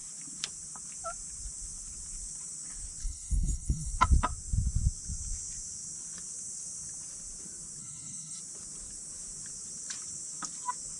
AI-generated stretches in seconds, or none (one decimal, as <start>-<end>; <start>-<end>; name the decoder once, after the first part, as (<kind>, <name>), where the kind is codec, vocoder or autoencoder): 3.0-3.9 (codec, SNAC); 7.8-8.4